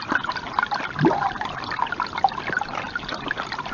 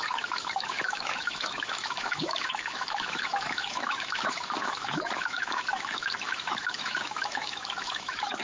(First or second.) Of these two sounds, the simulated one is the second